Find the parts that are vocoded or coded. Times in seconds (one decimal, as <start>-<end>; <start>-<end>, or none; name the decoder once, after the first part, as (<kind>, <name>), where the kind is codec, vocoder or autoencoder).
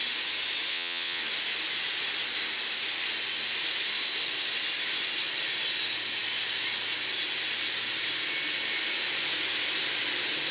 0.7-1.2 (vocoder, WaveNeXt)